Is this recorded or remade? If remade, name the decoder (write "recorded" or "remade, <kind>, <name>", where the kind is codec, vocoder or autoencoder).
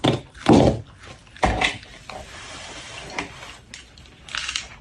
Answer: recorded